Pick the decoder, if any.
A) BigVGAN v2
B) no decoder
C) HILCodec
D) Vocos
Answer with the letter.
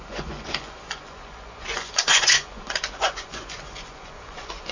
D